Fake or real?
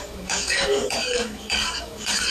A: fake